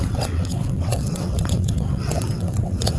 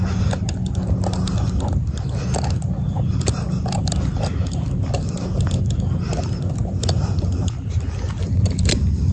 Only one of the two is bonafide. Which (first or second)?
second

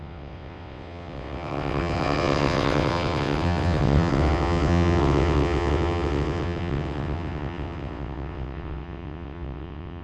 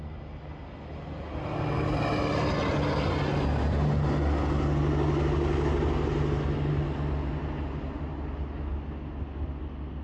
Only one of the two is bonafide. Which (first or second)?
second